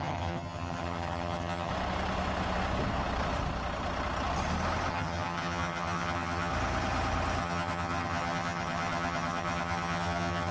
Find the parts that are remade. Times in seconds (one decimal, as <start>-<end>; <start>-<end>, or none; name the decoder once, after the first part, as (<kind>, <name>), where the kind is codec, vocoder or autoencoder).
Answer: 0.0-1.7 (vocoder, HiFi-GAN); 4.9-6.5; 7.4-10.5